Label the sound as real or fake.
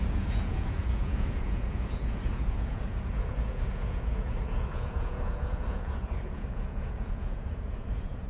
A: fake